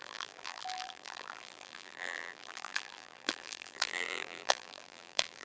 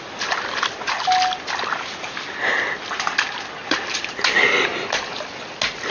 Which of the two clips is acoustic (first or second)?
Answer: second